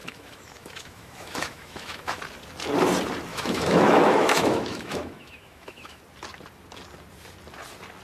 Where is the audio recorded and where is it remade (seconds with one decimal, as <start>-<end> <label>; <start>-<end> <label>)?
0.0-2.2 remade; 2.2-3.3 recorded; 3.3-6.0 remade; 6.0-8.0 recorded